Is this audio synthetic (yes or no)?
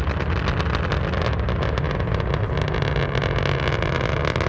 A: no